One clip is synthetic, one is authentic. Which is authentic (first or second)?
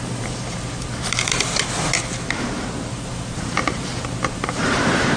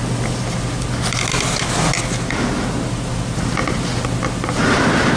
second